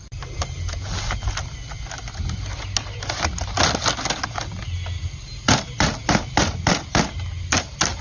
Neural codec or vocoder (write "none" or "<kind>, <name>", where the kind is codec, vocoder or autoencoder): none